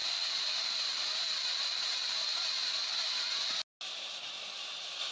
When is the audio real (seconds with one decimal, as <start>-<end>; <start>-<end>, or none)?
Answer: 0.0-5.1